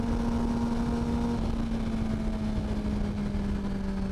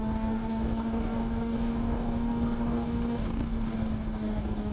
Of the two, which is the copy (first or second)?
second